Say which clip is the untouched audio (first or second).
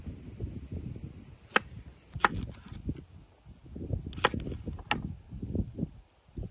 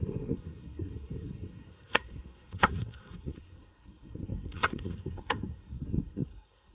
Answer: first